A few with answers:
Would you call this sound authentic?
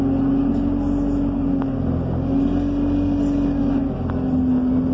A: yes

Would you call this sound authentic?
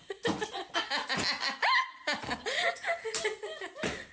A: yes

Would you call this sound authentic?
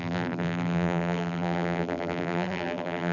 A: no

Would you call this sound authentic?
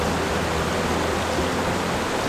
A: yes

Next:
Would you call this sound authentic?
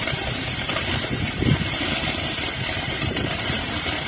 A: no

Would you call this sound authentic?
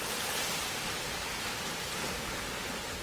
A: yes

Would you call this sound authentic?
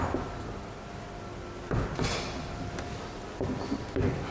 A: yes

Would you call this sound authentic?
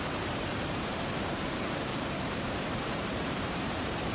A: no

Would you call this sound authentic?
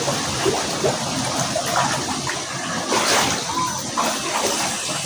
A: yes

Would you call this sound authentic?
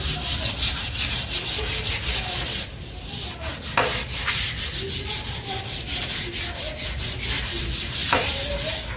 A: yes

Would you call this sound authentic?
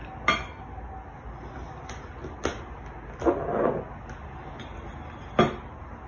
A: yes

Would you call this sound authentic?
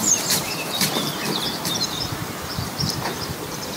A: no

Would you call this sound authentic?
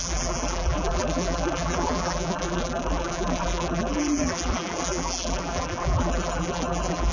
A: no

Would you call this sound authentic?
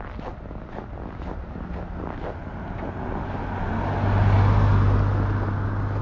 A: yes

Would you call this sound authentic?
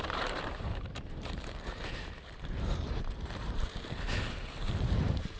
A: no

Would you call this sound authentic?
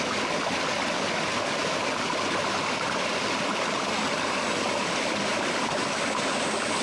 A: yes